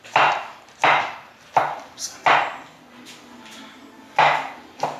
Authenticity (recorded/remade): recorded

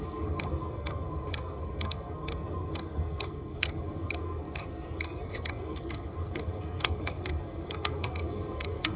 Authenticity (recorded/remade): remade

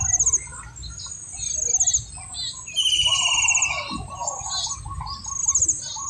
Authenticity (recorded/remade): recorded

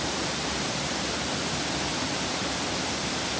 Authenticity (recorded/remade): recorded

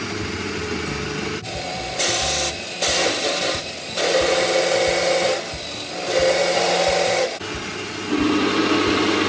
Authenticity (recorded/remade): recorded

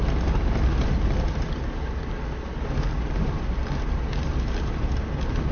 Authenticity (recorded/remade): recorded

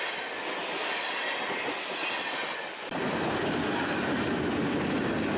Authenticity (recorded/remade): recorded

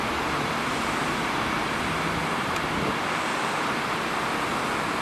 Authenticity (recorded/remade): recorded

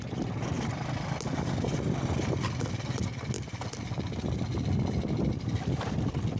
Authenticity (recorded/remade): recorded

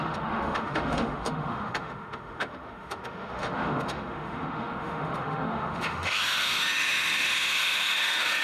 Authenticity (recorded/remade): remade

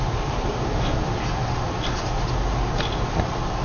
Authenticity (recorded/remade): recorded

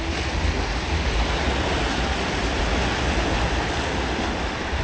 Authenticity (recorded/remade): recorded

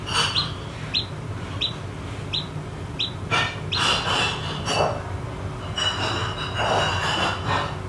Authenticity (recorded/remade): recorded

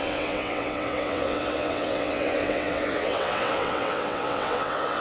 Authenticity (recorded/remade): remade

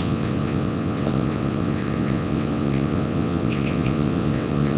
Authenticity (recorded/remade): remade